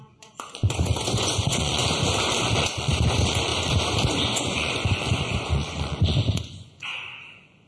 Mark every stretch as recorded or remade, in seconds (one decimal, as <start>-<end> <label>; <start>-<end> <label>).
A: 0.0-1.8 remade; 1.8-2.6 recorded; 2.6-3.5 remade; 3.5-4.1 recorded; 4.1-7.7 remade